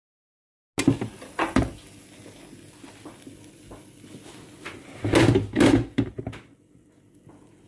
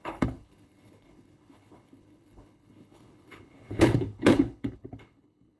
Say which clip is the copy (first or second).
second